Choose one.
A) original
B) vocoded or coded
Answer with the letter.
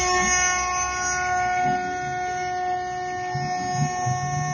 A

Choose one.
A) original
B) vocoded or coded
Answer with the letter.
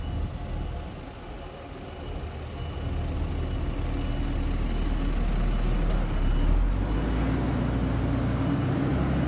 A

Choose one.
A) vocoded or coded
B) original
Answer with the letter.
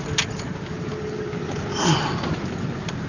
B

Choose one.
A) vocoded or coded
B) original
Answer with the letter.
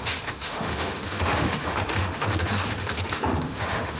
A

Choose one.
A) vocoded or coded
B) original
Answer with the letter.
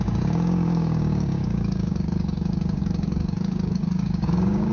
A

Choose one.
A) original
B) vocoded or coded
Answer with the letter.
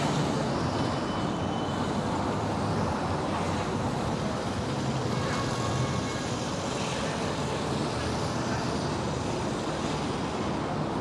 A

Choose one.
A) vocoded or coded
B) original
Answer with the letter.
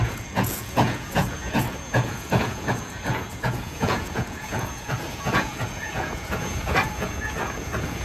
A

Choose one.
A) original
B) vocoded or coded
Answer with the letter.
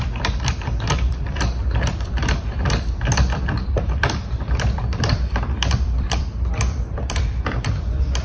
B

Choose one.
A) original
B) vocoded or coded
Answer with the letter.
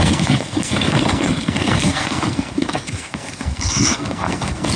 B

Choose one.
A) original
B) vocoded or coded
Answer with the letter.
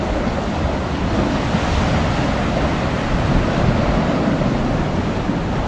A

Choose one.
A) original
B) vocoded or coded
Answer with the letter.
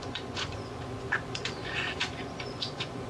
B